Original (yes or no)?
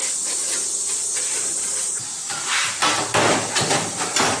yes